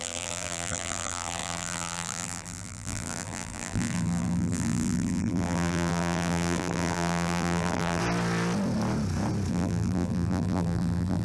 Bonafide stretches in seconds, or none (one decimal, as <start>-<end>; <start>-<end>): 8.0-9.5